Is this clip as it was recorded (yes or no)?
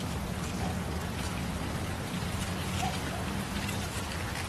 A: yes